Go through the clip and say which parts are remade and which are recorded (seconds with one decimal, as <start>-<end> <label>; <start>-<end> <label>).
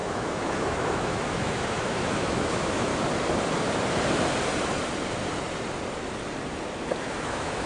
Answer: 0.0-2.9 remade; 2.9-7.0 recorded; 7.0-7.7 remade